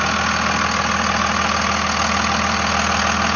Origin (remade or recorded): recorded